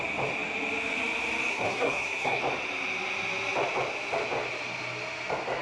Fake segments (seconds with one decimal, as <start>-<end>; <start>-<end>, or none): 1.5-2.4